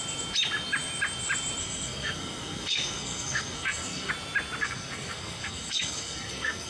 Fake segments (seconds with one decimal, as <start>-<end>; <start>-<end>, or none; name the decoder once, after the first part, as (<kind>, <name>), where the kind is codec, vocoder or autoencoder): 1.6-4.1 (codec, SNAC); 4.6-6.7